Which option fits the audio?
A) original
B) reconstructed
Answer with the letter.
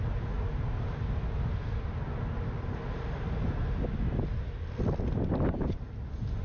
A